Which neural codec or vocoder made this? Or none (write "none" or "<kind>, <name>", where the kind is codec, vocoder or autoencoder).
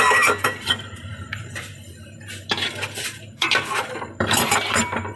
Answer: vocoder, BigVGAN v2